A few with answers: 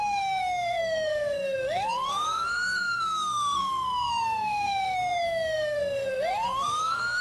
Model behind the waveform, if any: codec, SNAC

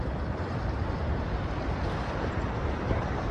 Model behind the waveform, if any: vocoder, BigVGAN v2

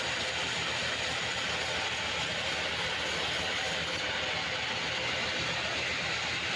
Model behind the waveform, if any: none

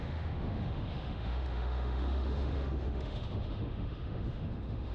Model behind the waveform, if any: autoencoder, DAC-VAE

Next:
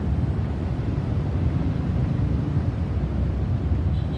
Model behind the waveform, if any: none